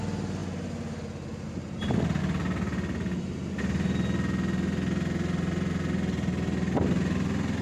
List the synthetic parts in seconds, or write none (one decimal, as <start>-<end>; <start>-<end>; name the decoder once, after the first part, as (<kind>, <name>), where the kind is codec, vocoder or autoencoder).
none

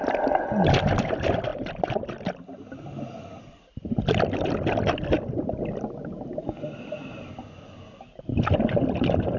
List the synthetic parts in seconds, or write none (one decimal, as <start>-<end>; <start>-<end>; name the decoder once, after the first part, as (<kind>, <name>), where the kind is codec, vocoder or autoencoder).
none

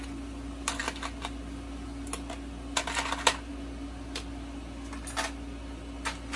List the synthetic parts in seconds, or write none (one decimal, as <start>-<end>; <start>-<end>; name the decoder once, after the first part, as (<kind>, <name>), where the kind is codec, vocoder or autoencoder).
none

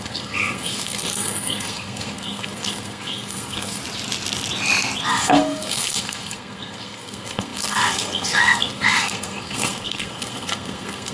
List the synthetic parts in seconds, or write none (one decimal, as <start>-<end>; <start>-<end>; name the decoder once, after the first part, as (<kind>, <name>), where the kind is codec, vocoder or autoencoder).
0.0-3.8 (codec, SNAC); 5.1-11.1

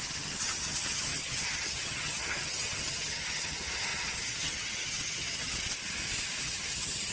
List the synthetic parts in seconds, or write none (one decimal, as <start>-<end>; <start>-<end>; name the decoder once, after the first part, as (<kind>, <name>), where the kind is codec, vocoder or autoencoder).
0.0-5.5 (vocoder, HiFi-GAN); 6.4-7.1

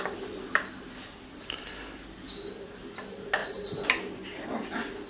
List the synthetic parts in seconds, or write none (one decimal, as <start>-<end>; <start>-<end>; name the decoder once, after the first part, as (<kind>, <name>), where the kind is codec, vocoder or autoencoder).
none